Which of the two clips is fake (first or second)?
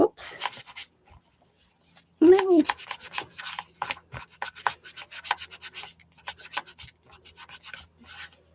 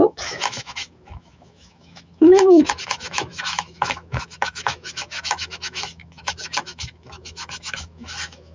second